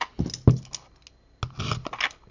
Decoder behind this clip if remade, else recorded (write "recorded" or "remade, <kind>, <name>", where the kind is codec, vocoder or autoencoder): recorded